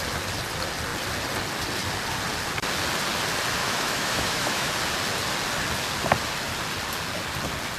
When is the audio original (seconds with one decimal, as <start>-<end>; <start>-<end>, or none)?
0.0-3.6; 4.7-7.8